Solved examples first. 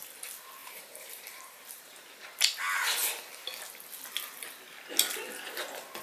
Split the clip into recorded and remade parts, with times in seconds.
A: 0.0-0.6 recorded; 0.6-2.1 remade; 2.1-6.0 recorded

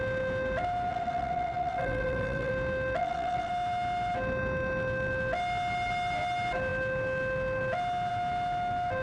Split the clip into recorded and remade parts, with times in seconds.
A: 0.0-0.9 recorded; 0.9-2.5 remade; 2.5-3.0 recorded; 3.0-3.5 remade; 3.5-9.0 recorded